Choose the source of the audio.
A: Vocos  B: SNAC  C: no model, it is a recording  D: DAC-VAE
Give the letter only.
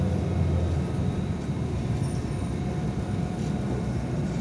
C